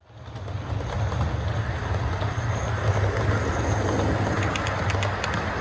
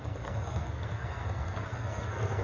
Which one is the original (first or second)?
first